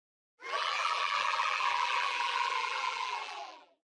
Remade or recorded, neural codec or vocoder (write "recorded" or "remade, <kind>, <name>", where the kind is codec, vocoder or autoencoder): remade, vocoder, BigVGAN v2